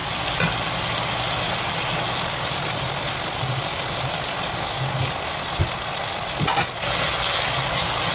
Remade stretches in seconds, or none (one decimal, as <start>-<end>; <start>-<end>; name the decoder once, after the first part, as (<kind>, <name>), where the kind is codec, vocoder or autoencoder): none